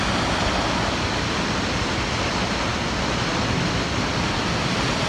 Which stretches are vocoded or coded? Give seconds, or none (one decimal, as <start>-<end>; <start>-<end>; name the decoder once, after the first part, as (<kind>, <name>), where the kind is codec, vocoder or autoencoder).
none